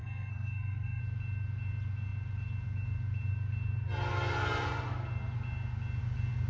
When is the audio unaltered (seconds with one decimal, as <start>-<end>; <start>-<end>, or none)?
1.0-6.5

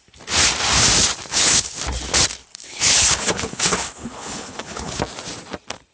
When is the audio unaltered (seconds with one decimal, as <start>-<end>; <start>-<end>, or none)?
0.0-1.3; 1.8-2.4; 5.0-5.9